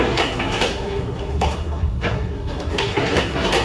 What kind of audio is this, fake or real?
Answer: fake